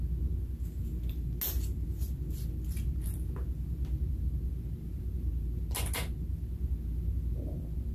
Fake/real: real